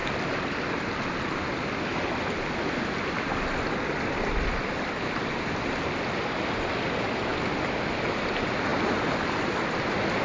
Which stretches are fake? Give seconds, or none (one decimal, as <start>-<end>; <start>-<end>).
none